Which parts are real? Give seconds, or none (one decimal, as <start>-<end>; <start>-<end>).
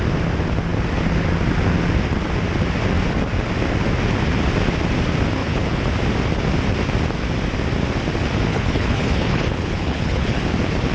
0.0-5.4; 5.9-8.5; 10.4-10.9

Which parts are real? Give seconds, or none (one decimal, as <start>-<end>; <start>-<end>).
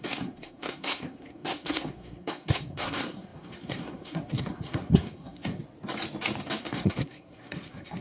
5.6-6.6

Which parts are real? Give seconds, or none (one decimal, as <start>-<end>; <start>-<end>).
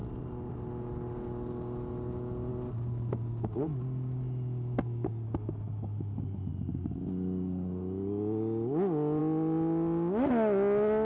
0.0-11.0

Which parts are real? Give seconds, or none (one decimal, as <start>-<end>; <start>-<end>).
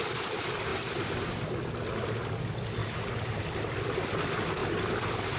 0.0-0.7; 1.5-2.8; 3.4-4.6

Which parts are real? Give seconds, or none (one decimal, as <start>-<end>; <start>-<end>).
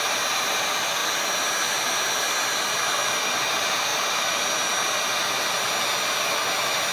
0.0-6.9